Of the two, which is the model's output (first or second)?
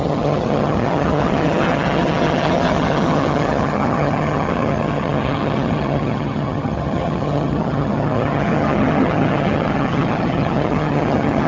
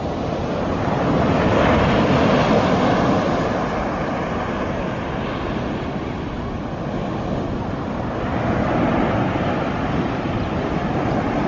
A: first